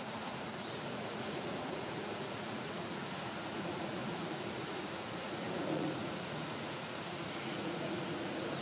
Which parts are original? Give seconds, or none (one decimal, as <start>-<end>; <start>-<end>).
none